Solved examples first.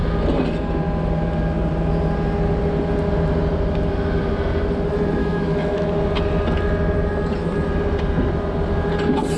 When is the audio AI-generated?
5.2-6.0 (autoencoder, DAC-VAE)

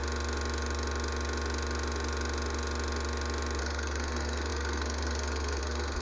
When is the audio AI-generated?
3.6-6.0 (codec, SNAC)

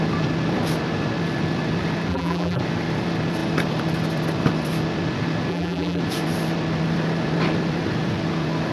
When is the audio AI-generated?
2.1-2.6 (vocoder, BigVGAN v2); 5.5-6.0

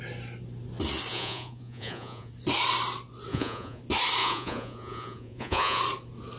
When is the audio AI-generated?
1.1-2.3 (vocoder, Vocos); 3.3-3.8; 4.2-5.8

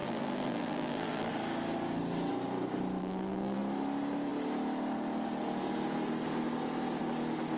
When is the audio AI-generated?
0.0-1.3 (vocoder, BigVGAN v2); 3.0-3.6

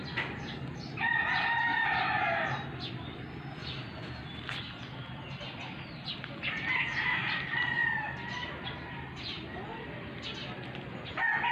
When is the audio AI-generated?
none